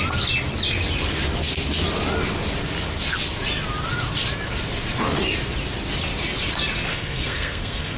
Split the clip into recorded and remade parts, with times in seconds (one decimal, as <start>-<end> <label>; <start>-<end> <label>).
0.0-6.9 recorded; 6.9-8.0 remade